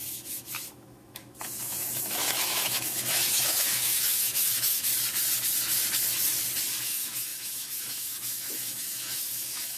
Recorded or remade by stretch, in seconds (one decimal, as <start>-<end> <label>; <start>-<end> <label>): 0.0-4.9 remade; 4.9-6.8 recorded; 6.8-9.8 remade

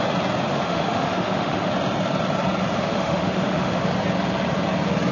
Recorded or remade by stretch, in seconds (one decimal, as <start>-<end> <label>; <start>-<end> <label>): 0.0-0.5 recorded; 0.5-1.7 remade; 1.7-2.9 recorded; 2.9-3.8 remade; 3.8-5.1 recorded

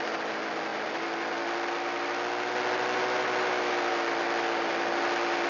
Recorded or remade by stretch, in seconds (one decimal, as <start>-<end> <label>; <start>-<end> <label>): 0.0-5.5 recorded

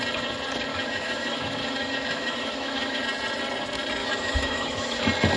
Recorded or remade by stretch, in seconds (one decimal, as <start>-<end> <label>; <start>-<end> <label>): 0.0-0.7 recorded; 0.7-3.0 remade; 3.0-4.0 recorded; 4.0-5.0 remade; 5.0-5.4 recorded

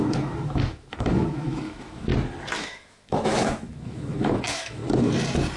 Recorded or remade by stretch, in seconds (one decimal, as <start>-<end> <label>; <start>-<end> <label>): 0.0-2.1 remade; 2.1-2.6 recorded; 2.6-4.8 remade; 4.8-5.6 recorded

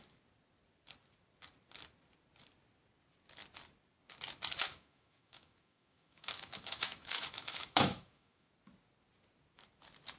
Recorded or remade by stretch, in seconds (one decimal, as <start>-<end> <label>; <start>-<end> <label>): 0.0-4.7 recorded; 4.7-8.5 remade; 8.5-10.2 recorded

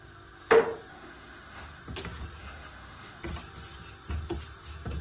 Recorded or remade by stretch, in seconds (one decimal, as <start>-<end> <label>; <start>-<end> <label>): 0.0-0.9 recorded; 0.9-1.8 remade; 1.8-2.4 recorded; 2.4-3.2 remade; 3.2-5.0 recorded

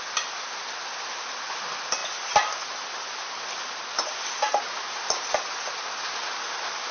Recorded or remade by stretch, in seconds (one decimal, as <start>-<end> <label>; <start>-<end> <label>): 0.0-6.9 recorded